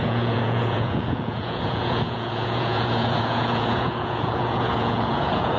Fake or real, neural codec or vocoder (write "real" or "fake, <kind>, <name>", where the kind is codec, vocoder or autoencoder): fake, vocoder, Vocos